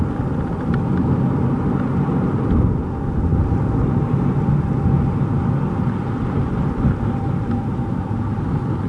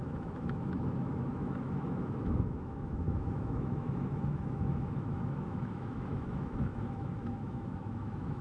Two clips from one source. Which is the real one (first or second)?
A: first